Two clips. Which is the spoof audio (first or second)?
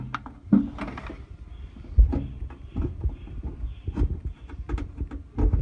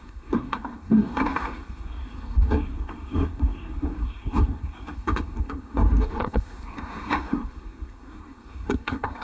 second